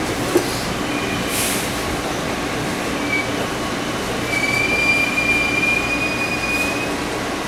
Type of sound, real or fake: real